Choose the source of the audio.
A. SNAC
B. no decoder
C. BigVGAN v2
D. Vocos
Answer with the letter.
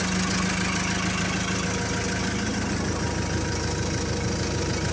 B